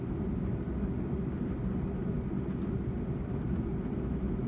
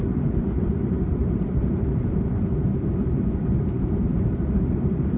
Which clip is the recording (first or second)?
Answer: first